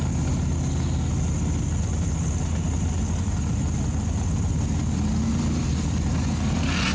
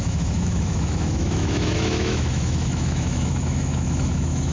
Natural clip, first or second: first